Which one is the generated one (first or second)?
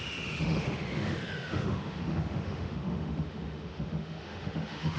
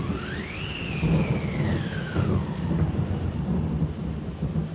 first